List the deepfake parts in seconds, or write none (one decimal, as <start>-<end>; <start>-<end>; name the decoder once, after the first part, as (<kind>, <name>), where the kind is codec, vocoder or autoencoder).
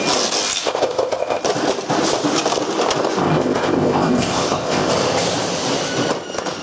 0.6-1.4 (codec, ZipCodec); 3.2-4.9